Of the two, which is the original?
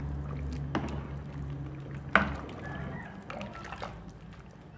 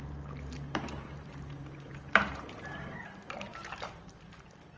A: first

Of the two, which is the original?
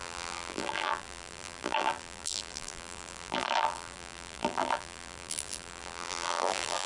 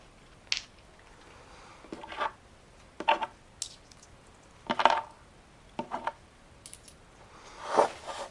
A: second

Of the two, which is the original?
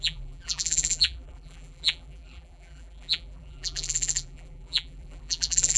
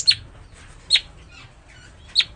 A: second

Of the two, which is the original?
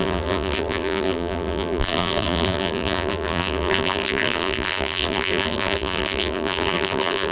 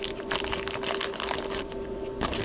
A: second